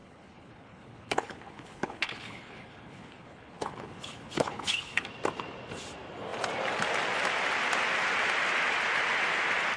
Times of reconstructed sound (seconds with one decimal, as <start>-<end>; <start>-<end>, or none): 0.0-5.1

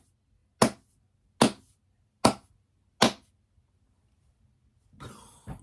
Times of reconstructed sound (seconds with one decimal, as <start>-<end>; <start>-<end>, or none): none

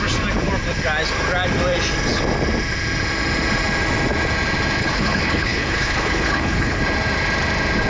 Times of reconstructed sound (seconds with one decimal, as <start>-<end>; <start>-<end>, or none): 4.8-6.8

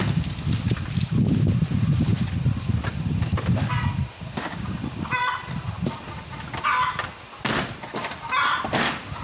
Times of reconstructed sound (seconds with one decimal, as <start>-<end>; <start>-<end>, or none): none

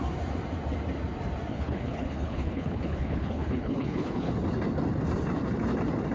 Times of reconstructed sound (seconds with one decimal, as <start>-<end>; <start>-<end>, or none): 1.5-4.3

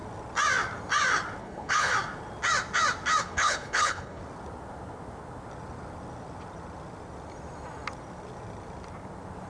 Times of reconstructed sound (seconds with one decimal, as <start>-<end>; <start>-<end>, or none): 1.4-1.9; 3.2-4.2

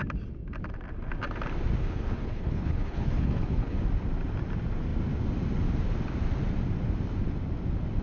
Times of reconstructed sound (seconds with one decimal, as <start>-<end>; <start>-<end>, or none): 1.8-3.8

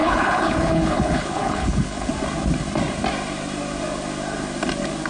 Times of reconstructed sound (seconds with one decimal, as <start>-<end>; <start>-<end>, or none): 0.0-2.1